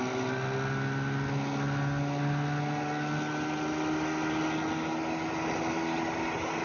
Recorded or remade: recorded